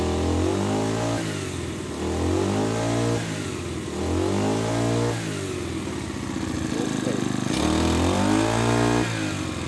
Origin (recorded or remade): recorded